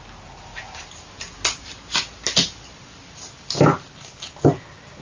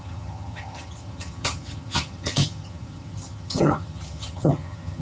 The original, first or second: first